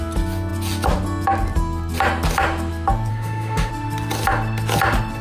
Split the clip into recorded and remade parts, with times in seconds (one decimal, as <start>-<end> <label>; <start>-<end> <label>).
0.0-3.1 recorded; 3.1-3.7 remade; 3.7-5.2 recorded